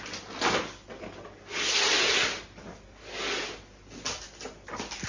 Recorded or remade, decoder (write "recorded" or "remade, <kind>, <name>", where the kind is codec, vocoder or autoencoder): recorded